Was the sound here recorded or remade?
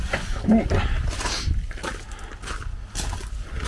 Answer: recorded